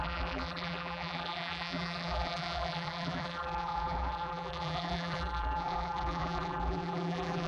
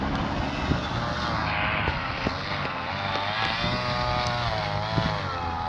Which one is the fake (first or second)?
first